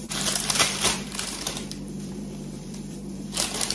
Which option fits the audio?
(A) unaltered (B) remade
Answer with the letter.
B